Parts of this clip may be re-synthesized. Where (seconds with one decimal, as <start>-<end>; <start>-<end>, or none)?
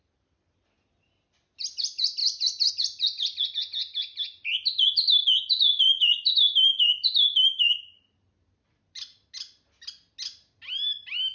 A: none